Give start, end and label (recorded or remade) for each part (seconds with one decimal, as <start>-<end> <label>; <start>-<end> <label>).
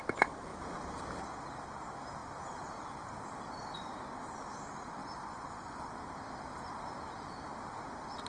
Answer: 0.0-5.0 recorded; 5.0-5.9 remade; 5.9-8.3 recorded